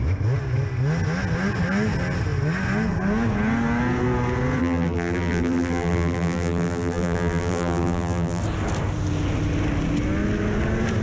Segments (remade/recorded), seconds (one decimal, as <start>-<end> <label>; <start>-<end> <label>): 0.0-4.6 recorded; 4.6-8.4 remade; 8.4-11.0 recorded